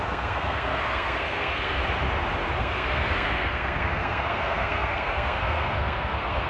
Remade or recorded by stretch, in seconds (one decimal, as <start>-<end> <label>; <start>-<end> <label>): 0.0-1.8 remade; 1.8-2.6 recorded; 2.6-6.5 remade